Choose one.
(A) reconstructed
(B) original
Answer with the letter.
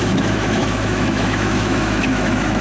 A